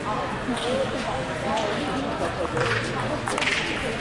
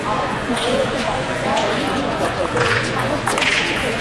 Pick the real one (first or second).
first